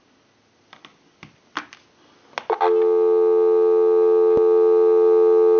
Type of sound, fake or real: real